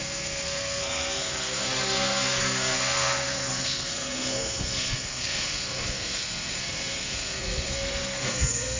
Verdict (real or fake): fake